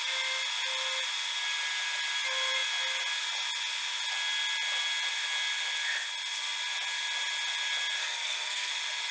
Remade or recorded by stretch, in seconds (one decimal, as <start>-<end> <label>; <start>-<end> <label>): 0.0-8.0 recorded; 8.0-8.7 remade; 8.7-9.1 recorded